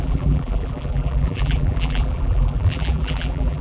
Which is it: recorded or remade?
remade